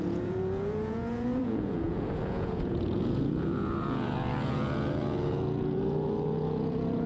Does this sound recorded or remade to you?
remade